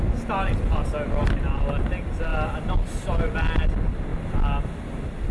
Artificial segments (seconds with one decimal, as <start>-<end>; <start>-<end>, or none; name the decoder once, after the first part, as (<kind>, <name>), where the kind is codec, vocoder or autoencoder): none